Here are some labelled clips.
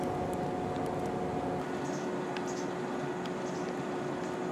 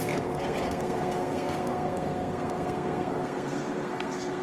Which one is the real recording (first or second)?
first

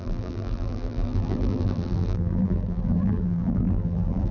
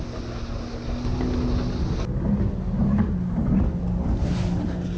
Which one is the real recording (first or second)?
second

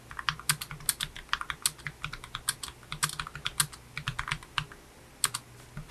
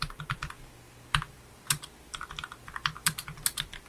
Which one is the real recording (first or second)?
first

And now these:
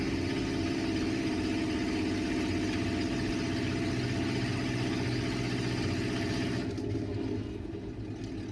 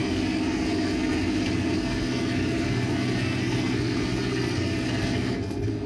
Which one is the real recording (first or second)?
first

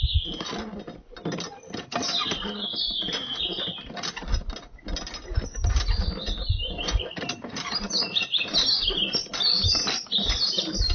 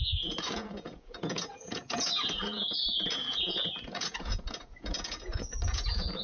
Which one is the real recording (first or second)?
first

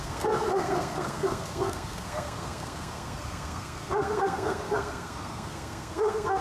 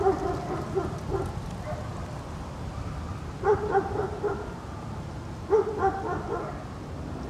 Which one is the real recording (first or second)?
second